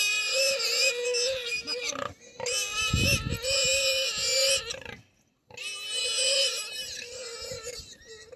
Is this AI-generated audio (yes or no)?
no